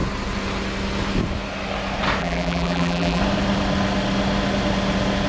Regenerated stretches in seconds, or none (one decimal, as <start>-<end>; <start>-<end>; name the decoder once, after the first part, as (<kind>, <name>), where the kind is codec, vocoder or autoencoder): 2.2-3.2 (vocoder, BigVGAN v2)